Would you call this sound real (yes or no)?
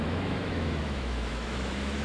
no